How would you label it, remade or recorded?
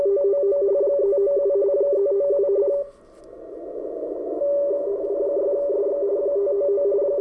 recorded